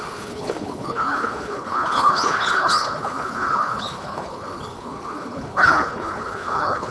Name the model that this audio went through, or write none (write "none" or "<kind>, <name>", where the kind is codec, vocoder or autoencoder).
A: codec, HILCodec